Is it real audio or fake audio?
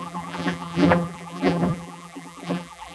fake